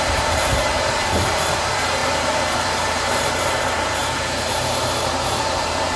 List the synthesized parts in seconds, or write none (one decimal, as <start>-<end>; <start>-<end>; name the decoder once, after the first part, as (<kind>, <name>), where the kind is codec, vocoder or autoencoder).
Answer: 0.0-6.0 (vocoder, BigVGAN v2)